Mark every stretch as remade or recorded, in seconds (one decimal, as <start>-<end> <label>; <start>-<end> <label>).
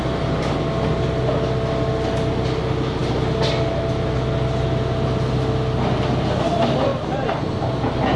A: 0.0-6.9 recorded; 6.9-7.4 remade; 7.4-8.2 recorded